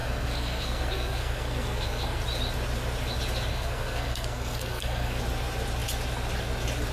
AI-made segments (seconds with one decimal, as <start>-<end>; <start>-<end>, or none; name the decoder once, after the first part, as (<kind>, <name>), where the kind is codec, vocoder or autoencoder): 0.0-2.2 (codec, SNAC); 3.5-5.2